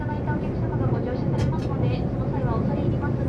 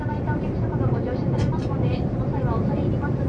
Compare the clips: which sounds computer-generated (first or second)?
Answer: second